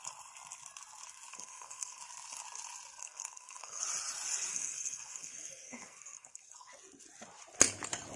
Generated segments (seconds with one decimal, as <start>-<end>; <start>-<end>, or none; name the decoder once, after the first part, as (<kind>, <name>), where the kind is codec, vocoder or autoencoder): 1.3-2.0 (codec, SNAC); 3.0-3.8; 4.5-6.7